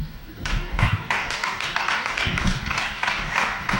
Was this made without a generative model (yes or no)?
no